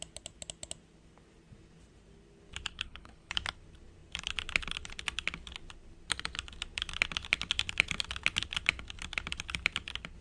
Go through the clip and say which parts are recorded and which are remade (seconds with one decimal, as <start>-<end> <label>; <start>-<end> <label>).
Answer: 0.0-2.7 recorded; 2.7-3.3 remade; 3.3-10.2 recorded